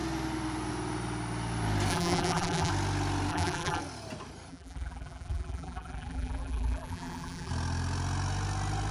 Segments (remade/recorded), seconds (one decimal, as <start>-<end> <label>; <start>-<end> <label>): 0.0-1.9 recorded; 1.9-2.7 remade; 2.7-3.3 recorded; 3.3-3.8 remade; 3.8-4.5 recorded; 4.5-7.5 remade; 7.5-8.9 recorded